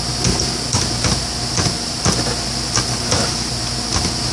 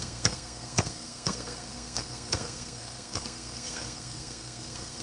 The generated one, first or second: second